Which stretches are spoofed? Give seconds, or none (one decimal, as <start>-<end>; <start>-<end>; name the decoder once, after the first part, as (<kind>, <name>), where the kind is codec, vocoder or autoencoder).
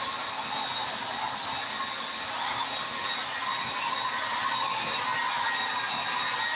none